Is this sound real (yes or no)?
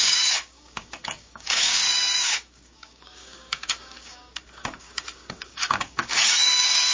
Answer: no